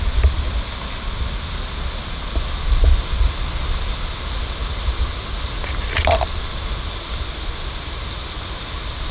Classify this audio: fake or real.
real